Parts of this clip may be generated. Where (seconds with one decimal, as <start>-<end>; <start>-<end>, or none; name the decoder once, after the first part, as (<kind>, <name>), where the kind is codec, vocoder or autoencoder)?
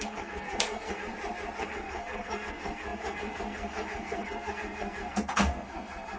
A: 0.0-1.1 (codec, SNAC); 1.6-6.2